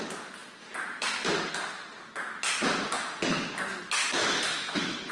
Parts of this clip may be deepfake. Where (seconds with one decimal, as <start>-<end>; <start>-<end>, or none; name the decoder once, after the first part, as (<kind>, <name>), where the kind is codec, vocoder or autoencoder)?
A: 4.0-5.1 (autoencoder, DAC-VAE)